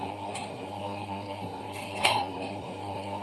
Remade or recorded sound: remade